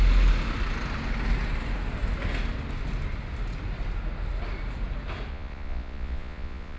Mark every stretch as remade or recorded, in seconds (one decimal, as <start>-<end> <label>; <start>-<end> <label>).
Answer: 0.0-5.3 recorded; 5.3-6.8 remade